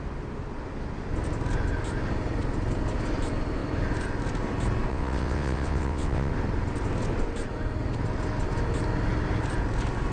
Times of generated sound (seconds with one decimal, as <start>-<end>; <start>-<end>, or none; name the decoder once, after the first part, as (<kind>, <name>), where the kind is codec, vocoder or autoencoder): 4.9-6.3 (vocoder, WaveNeXt)